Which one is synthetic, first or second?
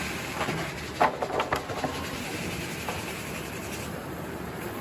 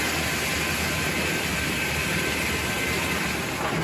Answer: first